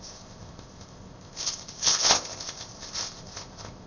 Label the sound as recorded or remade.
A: remade